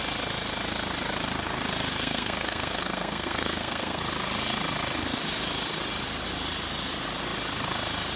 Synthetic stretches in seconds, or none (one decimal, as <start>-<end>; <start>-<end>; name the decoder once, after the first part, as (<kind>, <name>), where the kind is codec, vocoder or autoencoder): 1.9-4.0 (codec, SNAC)